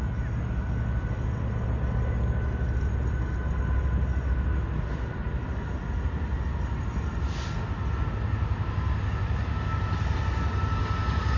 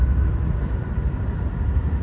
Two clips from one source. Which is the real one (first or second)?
first